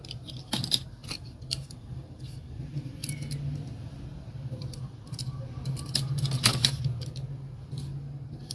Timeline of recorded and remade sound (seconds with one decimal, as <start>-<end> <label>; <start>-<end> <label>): 0.0-1.0 recorded; 1.0-2.2 remade; 2.2-8.5 recorded